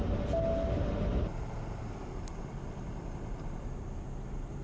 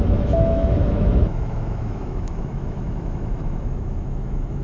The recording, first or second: first